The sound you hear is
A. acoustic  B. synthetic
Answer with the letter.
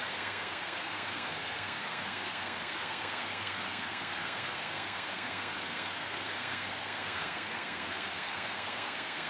B